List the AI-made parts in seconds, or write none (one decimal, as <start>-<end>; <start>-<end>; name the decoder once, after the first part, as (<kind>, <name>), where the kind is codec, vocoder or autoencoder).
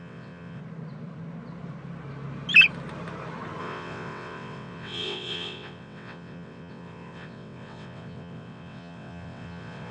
0.0-0.6 (vocoder, WaveNeXt); 3.6-9.9